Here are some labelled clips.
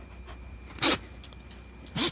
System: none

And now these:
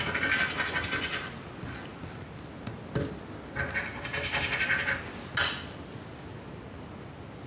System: none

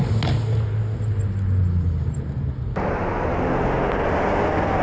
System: none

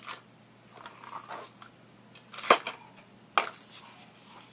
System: none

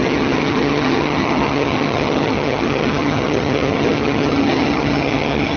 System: vocoder, HiFi-GAN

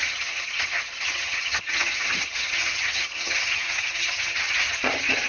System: vocoder, HiFi-GAN